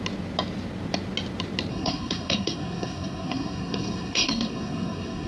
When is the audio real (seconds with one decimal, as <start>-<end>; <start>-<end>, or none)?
0.0-1.7

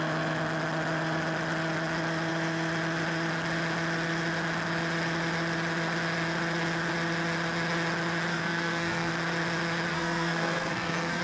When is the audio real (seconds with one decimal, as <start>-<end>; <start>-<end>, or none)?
0.0-8.3; 9.1-9.9

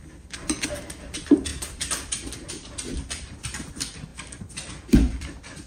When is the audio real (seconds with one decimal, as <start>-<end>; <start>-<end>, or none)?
0.0-5.7

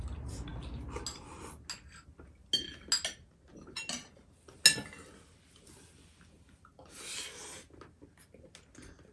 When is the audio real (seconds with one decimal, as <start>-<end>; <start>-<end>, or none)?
0.0-9.1

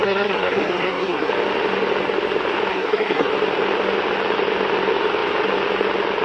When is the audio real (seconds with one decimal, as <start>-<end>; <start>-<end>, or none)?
1.3-2.7; 3.3-6.2

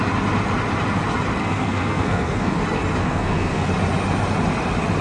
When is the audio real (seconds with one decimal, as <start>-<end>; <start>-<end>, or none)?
0.0-1.4; 2.6-3.0; 3.7-5.0

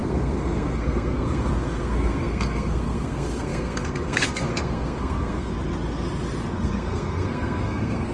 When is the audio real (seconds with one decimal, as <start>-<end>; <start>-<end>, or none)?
5.5-6.5